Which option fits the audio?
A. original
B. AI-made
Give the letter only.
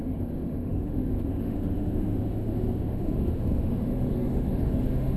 B